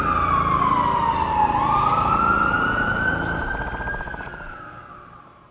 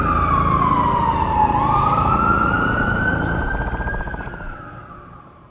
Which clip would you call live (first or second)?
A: first